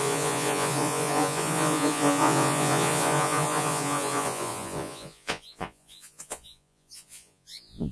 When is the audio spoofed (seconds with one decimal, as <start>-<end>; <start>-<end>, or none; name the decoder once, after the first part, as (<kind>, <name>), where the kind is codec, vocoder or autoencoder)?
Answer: 0.0-7.9 (vocoder, Vocos)